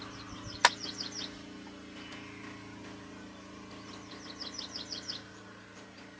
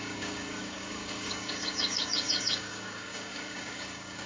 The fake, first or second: second